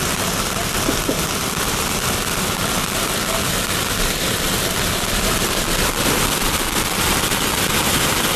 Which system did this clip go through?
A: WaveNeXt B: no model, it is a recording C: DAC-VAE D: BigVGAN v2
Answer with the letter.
B